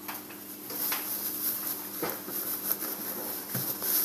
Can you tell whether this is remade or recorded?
recorded